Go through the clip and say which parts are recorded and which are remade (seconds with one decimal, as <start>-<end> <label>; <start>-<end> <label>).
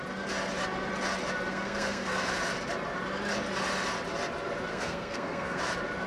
0.0-1.5 recorded; 1.5-2.3 remade; 2.3-4.7 recorded; 4.7-5.6 remade; 5.6-6.1 recorded